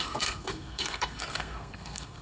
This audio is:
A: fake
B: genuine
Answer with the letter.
A